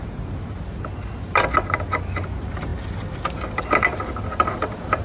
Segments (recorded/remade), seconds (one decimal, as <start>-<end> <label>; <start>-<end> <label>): 0.0-5.0 recorded